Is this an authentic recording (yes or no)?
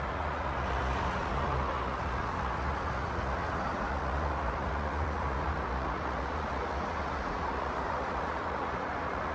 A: no